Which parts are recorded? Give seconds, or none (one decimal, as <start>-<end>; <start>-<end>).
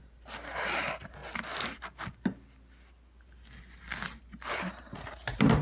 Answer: 1.2-4.5